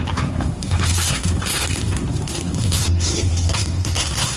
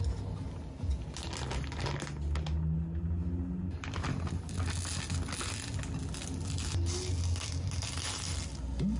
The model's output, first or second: first